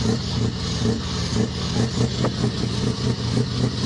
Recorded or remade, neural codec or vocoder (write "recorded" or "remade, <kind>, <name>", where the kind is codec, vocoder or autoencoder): recorded